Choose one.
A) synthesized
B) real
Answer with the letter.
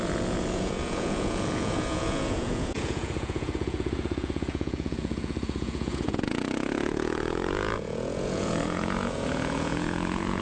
A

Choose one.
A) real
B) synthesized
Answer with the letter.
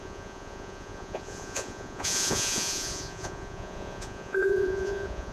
B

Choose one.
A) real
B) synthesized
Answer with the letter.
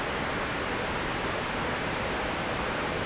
A